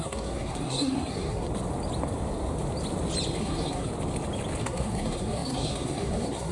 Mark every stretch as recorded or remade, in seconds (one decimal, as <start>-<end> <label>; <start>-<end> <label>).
0.0-1.5 remade; 1.5-3.4 recorded; 3.4-3.9 remade; 3.9-4.6 recorded; 4.6-6.5 remade